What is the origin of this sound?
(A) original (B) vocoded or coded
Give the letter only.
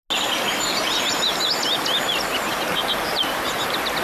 A